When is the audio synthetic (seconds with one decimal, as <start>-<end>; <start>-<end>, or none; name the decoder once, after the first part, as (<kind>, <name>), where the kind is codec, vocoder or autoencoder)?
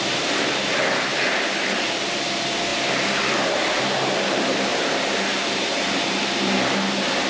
0.0-1.1 (vocoder, BigVGAN v2); 1.9-7.3